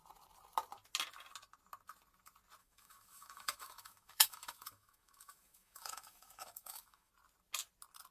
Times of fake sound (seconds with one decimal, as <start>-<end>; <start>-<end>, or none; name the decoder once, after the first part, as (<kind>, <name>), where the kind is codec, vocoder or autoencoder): 2.6-7.1 (autoencoder, DAC-VAE)